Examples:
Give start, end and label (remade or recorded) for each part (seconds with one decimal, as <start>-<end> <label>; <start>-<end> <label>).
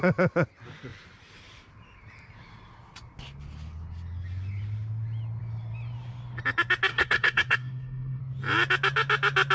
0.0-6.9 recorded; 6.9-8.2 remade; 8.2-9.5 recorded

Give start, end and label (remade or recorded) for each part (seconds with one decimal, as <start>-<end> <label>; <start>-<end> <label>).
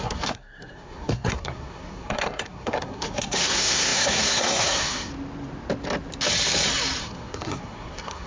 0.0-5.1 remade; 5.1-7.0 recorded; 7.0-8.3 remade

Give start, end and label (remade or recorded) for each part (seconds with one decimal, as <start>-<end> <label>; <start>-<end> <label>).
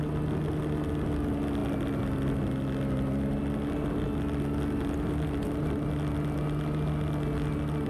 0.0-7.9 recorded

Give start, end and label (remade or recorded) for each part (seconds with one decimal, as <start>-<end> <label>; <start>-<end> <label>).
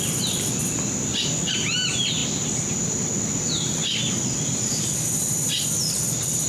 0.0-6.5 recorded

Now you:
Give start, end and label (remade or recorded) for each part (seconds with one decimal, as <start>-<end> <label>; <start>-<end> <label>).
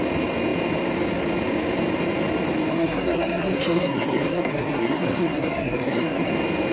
0.0-2.7 recorded; 2.7-6.3 remade; 6.3-6.7 recorded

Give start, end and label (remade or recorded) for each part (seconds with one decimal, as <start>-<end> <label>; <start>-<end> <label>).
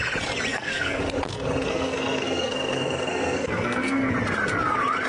0.0-0.5 recorded; 0.5-1.0 remade; 1.0-1.7 recorded; 1.7-4.1 remade; 4.1-5.1 recorded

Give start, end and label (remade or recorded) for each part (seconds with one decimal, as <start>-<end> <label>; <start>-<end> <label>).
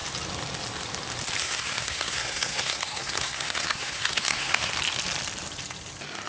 0.0-1.4 recorded; 1.4-4.7 remade; 4.7-6.3 recorded